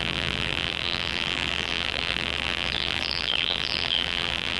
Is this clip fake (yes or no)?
yes